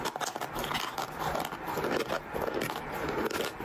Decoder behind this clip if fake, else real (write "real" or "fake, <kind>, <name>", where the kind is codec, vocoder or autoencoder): real